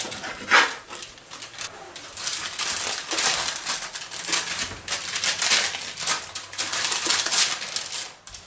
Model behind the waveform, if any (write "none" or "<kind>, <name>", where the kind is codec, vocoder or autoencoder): none